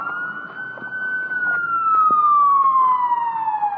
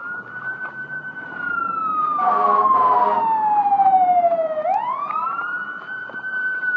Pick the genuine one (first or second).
first